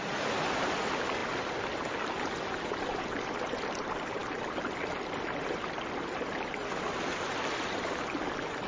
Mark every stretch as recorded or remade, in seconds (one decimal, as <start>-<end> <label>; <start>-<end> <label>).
0.0-8.7 recorded